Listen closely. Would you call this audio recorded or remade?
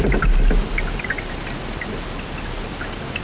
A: recorded